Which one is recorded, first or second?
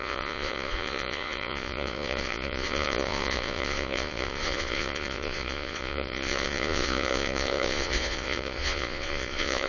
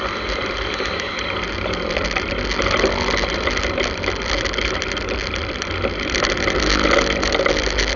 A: second